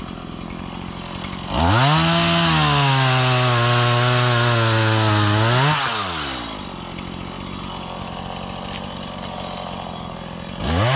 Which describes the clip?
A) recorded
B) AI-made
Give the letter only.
A